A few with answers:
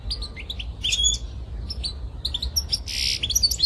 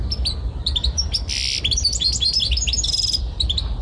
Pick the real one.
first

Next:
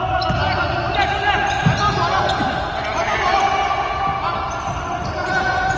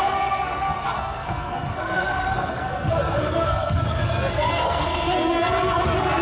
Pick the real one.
first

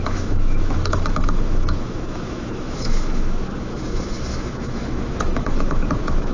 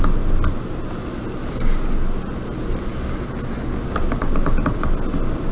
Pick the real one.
second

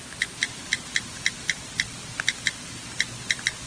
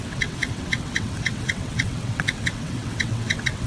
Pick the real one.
first